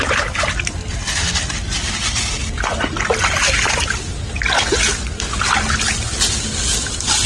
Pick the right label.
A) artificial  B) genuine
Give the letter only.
B